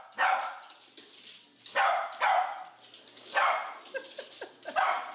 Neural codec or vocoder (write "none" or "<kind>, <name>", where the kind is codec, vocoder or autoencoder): none